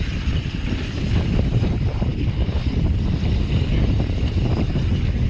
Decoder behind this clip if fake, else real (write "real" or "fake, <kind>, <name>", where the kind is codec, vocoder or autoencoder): real